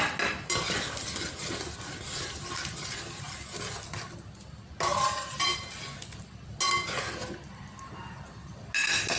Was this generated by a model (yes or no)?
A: no